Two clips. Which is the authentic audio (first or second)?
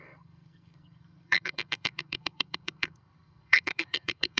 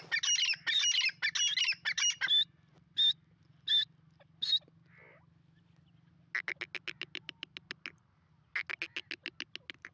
second